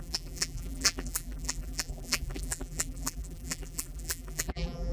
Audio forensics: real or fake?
fake